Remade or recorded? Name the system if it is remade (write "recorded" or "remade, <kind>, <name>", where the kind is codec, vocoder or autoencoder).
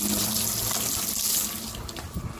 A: recorded